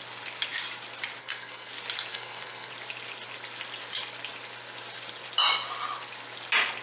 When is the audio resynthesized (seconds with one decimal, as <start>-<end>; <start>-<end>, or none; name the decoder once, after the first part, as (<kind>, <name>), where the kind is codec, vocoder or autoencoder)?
1.2-1.7 (codec, SNAC); 2.1-2.7